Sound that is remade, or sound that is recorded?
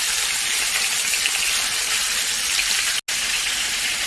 recorded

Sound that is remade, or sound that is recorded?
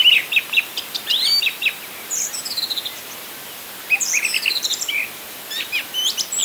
remade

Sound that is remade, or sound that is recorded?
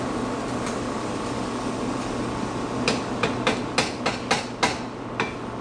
recorded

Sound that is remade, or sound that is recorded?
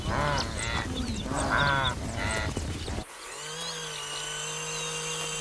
recorded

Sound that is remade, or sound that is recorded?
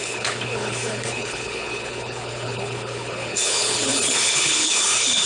remade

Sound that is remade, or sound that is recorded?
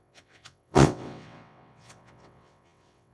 remade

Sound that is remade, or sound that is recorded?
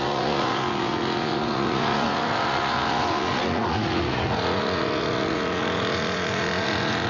remade